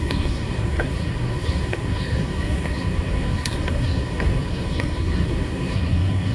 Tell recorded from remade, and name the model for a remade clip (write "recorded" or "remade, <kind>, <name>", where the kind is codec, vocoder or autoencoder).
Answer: remade, codec, SNAC